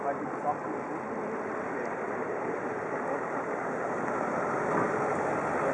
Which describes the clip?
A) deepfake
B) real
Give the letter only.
B